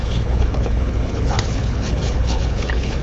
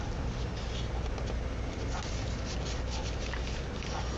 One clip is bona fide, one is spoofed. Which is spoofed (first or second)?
first